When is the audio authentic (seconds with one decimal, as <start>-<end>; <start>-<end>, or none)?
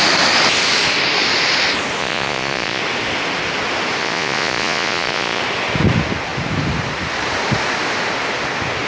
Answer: 0.0-2.0; 2.8-4.0; 5.4-8.9